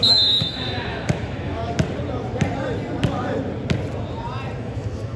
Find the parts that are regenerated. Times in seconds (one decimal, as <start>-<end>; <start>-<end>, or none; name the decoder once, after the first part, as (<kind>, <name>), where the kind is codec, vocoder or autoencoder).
0.0-1.6 (autoencoder, DAC-VAE); 4.6-5.2